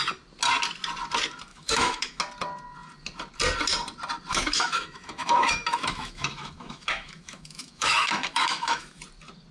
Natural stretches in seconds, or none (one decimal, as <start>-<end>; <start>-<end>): 0.0-1.5; 2.2-4.3; 9.0-9.5